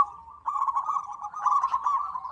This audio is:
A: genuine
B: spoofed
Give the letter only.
A